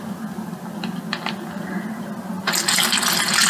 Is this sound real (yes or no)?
yes